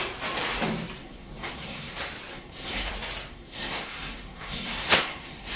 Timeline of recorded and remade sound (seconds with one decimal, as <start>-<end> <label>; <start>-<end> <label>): 0.0-1.0 recorded; 1.0-1.9 remade; 1.9-2.3 recorded; 2.3-2.9 remade; 2.9-3.3 recorded; 3.3-5.6 remade